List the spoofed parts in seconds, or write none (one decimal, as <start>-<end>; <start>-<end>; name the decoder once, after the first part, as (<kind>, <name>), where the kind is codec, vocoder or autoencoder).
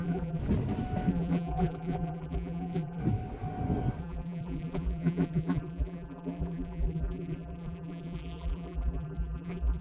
0.0-0.4 (vocoder, BigVGAN v2); 1.1-3.0; 4.0-9.8